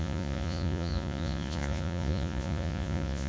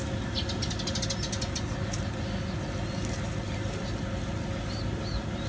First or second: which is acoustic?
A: second